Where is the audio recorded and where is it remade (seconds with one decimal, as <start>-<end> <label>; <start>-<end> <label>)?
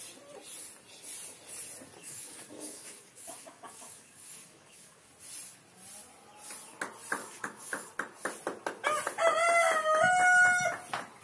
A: 0.0-2.0 recorded; 2.0-5.1 remade; 5.1-7.2 recorded; 7.2-7.9 remade; 7.9-11.2 recorded